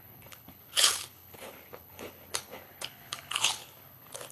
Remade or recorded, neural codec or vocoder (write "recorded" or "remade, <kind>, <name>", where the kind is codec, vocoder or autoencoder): remade, codec, HILCodec